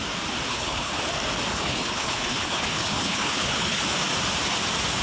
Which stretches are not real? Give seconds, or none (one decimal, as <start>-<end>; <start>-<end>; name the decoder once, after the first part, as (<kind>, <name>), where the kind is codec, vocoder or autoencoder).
0.5-1.0 (codec, HILCodec); 1.5-3.8